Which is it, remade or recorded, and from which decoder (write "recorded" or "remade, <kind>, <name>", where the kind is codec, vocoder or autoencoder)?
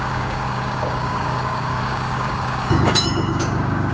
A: remade, codec, DAC